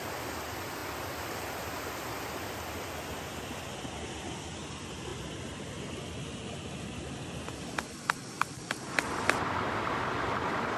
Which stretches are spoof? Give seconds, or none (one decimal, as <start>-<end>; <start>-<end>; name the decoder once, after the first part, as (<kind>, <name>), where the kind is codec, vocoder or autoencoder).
none